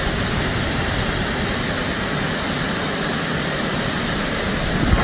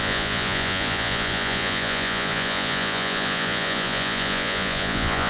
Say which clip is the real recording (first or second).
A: first